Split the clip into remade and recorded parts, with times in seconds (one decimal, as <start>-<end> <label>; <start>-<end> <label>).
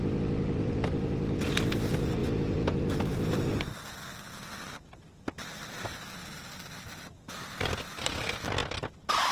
0.0-9.3 recorded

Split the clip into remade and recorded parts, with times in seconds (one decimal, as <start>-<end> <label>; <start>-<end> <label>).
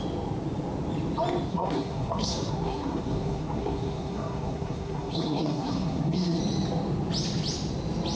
0.0-1.5 recorded; 1.5-6.4 remade; 6.4-8.2 recorded